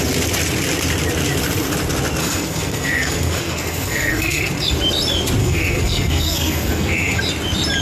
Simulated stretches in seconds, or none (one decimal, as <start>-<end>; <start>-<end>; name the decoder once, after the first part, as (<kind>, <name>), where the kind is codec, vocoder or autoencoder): 2.2-4.5 (codec, SNAC); 5.4-7.2